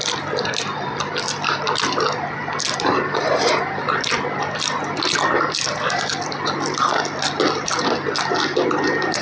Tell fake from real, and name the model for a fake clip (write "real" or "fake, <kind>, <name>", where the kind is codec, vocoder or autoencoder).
real